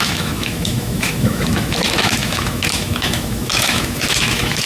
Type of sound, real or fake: fake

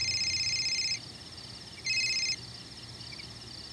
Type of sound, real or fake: real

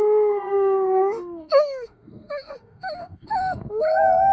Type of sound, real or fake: fake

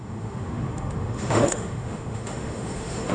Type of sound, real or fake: fake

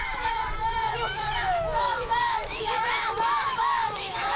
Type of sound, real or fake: fake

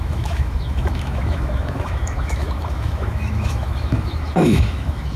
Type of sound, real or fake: fake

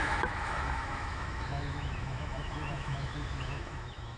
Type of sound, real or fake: fake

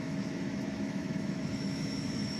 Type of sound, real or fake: fake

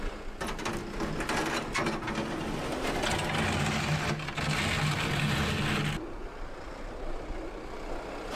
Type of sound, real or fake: real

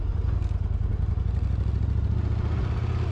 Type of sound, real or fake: real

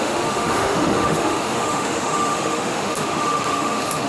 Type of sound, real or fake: fake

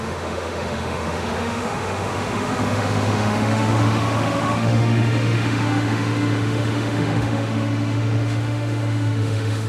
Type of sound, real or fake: fake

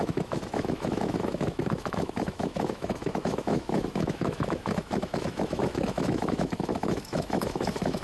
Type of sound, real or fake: fake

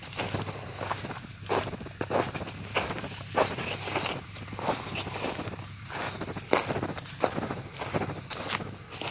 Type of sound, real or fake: real